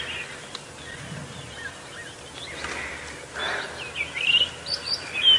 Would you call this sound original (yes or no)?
yes